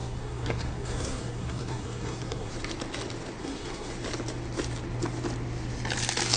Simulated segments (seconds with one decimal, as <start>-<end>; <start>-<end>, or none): 0.0-2.5; 3.4-3.9

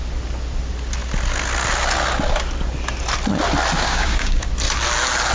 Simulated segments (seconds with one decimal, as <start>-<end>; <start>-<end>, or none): 3.8-4.5

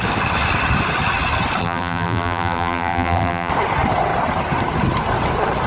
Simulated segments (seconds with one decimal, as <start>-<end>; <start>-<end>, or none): 1.6-3.5

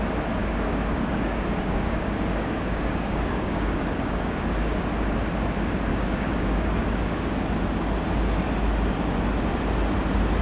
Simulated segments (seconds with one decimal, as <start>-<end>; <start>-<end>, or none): 0.4-4.8; 5.9-7.3